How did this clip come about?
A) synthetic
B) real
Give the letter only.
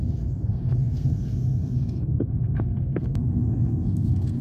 A